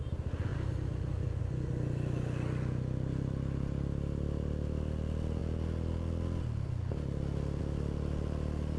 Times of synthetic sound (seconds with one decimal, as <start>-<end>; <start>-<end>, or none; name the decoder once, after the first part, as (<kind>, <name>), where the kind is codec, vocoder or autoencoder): none

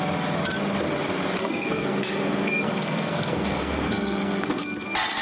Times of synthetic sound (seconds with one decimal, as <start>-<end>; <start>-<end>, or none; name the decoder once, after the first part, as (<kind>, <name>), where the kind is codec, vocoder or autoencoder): 1.4-4.5 (codec, SNAC)

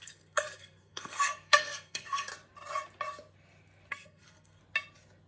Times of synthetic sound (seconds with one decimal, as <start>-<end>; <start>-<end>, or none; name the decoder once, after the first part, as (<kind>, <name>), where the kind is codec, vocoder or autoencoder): 0.0-2.3 (codec, SNAC); 3.9-4.6

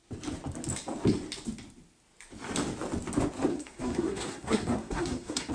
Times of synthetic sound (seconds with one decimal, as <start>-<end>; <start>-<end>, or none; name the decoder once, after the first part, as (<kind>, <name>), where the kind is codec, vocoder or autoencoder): 3.5-5.5 (codec, SNAC)

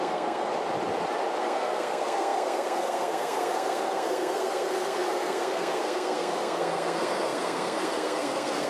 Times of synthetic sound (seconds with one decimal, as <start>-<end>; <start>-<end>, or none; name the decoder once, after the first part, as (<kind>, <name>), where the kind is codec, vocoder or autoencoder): 0.0-0.5 (codec, SNAC); 1.4-8.7